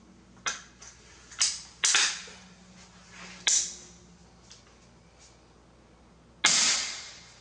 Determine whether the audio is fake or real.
real